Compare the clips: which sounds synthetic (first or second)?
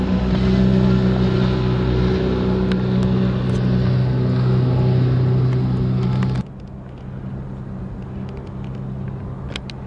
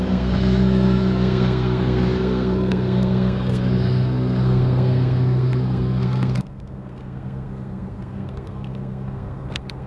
second